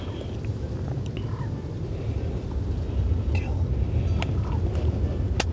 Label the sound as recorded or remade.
recorded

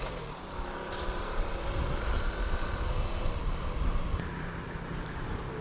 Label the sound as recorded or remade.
remade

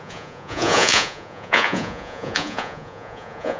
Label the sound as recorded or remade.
remade